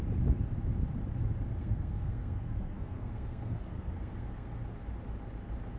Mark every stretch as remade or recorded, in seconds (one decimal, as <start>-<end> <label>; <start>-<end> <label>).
0.0-1.6 recorded; 1.6-4.6 remade; 4.6-5.8 recorded